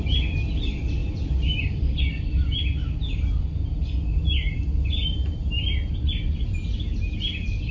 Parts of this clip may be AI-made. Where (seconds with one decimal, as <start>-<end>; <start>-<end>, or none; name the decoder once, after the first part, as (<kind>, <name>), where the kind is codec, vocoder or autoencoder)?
none